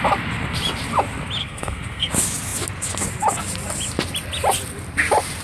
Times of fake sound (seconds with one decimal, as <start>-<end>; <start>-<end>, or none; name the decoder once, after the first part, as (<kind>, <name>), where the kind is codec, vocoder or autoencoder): 1.4-2.1 (codec, SNAC)